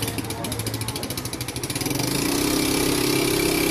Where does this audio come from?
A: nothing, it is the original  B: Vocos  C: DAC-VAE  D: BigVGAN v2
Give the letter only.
A